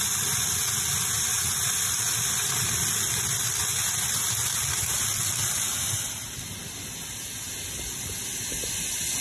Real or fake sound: real